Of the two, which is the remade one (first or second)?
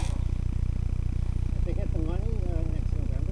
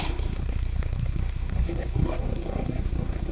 second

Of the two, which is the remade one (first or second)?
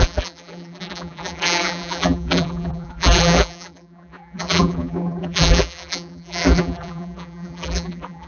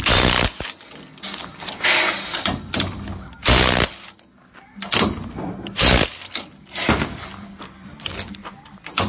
first